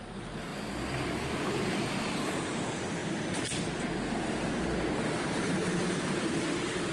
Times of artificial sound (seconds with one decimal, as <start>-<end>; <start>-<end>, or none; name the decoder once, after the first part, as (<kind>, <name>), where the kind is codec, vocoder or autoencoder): 0.5-2.3 (vocoder, BigVGAN v2); 3.0-6.2